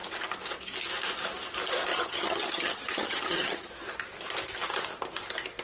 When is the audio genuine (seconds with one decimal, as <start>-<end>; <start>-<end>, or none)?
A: 0.0-1.9; 3.7-5.6